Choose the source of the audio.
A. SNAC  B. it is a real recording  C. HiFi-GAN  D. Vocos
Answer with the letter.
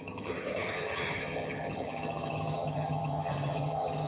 C